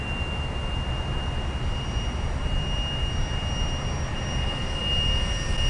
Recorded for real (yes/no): yes